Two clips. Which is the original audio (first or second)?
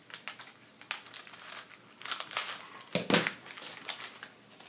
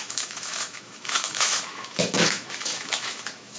first